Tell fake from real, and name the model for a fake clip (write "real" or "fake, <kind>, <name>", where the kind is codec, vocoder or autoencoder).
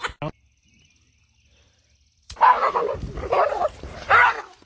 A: real